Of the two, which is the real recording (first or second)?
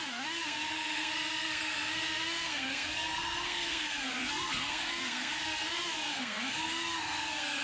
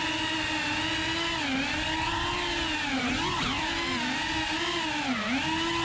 second